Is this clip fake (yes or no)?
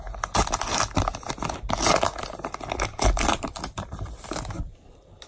no